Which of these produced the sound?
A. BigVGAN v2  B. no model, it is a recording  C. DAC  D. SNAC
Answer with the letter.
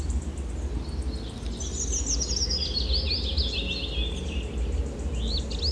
B